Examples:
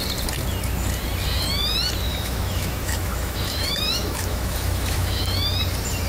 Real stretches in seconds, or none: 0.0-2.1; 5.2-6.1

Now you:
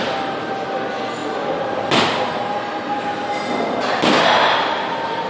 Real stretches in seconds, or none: 0.0-5.3

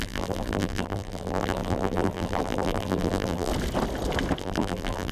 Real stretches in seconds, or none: 3.5-4.4

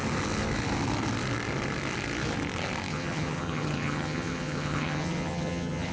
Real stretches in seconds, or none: 0.0-2.9

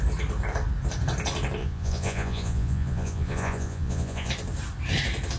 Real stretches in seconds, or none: 0.0-1.6; 4.3-5.4